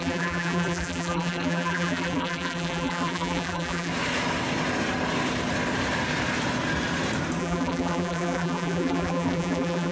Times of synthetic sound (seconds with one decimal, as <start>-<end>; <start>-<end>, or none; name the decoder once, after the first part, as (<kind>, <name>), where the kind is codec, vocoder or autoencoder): 0.0-3.9 (vocoder, BigVGAN v2); 7.4-9.9